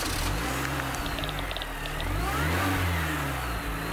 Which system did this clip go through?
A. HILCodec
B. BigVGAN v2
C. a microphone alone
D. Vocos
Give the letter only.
C